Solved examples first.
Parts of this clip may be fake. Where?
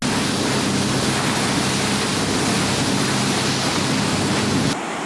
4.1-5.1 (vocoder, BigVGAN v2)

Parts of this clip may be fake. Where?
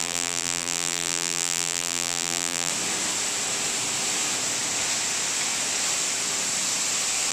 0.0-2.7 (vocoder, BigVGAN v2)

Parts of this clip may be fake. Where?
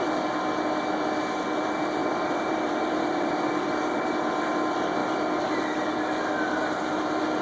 2.0-3.3 (vocoder, BigVGAN v2); 5.0-5.6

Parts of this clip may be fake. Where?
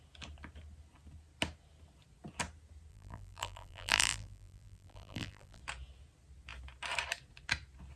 2.9-5.6 (vocoder, BigVGAN v2)